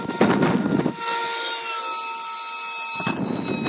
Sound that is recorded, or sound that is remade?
recorded